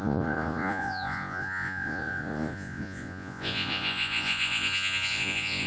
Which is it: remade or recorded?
remade